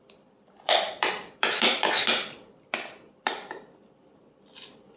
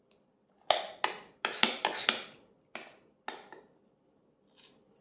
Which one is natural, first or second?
second